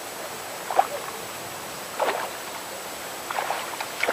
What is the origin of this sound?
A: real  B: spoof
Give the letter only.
A